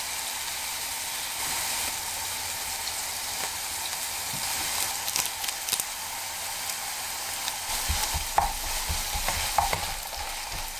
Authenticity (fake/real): real